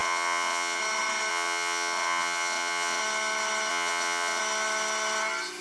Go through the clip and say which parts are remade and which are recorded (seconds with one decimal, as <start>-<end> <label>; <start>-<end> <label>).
0.0-0.8 remade; 0.8-1.3 recorded; 1.3-3.0 remade; 3.0-3.7 recorded; 3.7-4.4 remade; 4.4-5.6 recorded